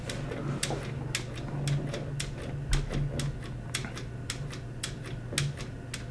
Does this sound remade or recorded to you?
recorded